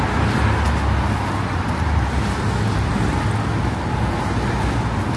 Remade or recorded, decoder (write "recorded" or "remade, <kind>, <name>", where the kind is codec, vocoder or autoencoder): recorded